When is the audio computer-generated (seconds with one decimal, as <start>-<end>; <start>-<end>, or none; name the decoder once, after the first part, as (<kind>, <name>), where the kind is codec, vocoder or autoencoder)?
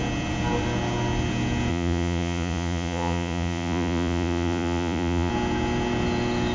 1.7-5.3 (vocoder, Vocos)